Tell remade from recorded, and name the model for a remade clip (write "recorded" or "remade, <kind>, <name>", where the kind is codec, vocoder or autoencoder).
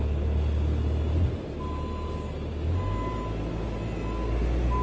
recorded